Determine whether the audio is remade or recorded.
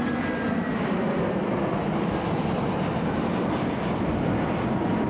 recorded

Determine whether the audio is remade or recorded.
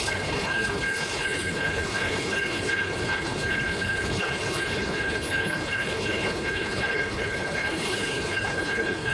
remade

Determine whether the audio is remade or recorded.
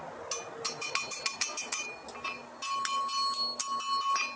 recorded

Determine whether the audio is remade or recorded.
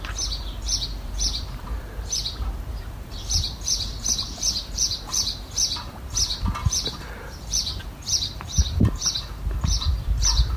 remade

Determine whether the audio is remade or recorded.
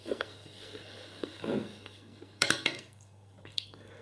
remade